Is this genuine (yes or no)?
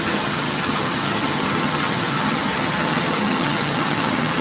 no